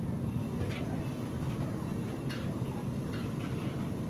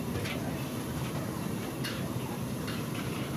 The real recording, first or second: first